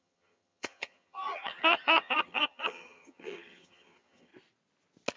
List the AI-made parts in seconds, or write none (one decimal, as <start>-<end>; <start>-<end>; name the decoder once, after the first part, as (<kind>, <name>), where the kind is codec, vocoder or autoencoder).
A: 0.0-4.3 (vocoder, HiFi-GAN)